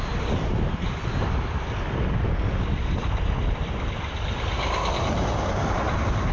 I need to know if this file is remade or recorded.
recorded